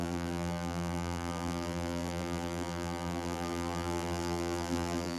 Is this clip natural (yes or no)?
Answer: no